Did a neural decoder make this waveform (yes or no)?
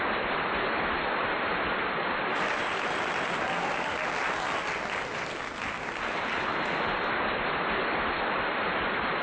no